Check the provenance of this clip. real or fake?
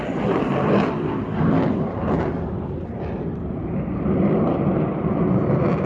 real